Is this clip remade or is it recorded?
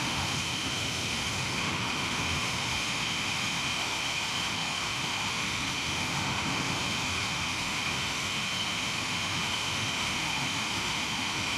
remade